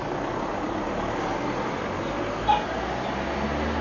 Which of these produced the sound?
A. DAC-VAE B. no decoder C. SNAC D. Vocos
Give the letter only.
B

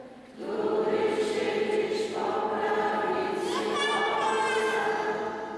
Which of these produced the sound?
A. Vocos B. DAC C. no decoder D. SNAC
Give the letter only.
C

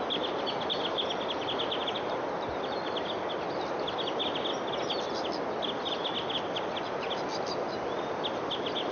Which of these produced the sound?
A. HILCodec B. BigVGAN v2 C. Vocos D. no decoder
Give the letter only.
D